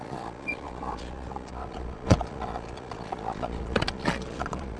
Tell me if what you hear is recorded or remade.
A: remade